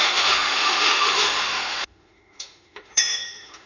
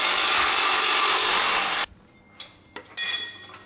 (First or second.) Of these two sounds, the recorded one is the second